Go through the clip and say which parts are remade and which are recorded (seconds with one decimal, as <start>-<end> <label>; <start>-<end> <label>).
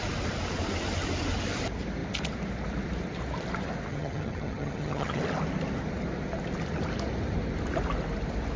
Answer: 0.0-3.9 recorded; 3.9-5.2 remade; 5.2-8.6 recorded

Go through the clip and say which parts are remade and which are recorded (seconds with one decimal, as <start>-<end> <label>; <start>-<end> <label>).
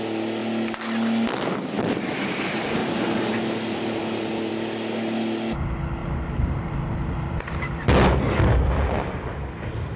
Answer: 0.0-6.0 recorded; 6.0-7.4 remade; 7.4-10.0 recorded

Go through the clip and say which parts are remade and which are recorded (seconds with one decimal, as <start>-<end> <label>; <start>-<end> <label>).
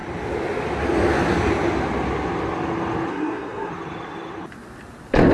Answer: 0.0-3.1 recorded; 3.1-3.7 remade; 3.7-5.3 recorded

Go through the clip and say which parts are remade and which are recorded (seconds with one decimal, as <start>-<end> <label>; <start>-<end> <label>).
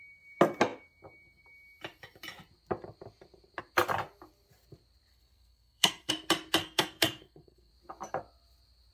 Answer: 0.0-5.1 recorded; 5.1-6.1 remade; 6.1-6.6 recorded; 6.6-7.7 remade; 7.7-8.9 recorded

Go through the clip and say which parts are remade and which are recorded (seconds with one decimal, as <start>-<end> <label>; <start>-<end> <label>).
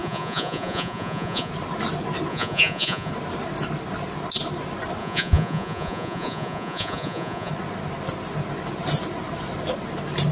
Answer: 0.0-1.5 remade; 1.5-2.3 recorded; 2.3-3.1 remade; 3.1-5.0 recorded; 5.0-7.5 remade; 7.5-10.3 recorded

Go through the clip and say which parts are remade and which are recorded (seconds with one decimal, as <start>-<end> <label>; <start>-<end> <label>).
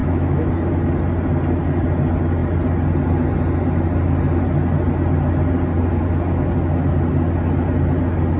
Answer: 0.0-0.5 remade; 0.5-8.4 recorded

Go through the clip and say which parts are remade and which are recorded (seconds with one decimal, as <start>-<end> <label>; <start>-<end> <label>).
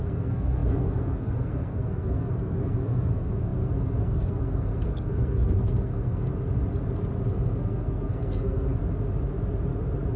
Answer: 0.0-6.3 remade; 6.3-7.3 recorded; 7.3-8.8 remade; 8.8-10.2 recorded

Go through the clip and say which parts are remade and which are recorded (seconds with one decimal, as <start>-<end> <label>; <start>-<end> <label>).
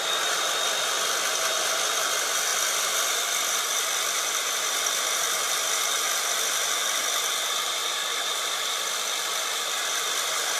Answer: 0.0-7.0 remade; 7.0-8.3 recorded; 8.3-10.6 remade